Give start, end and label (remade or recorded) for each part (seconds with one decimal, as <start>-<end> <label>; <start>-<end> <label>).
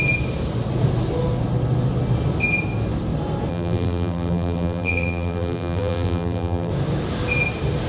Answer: 0.0-3.5 recorded; 3.5-6.7 remade; 6.7-7.9 recorded